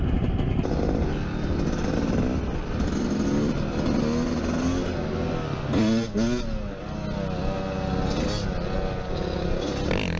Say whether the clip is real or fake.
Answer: real